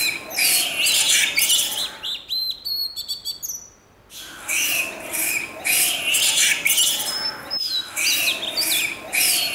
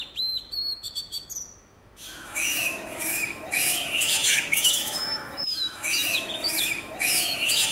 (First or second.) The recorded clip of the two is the first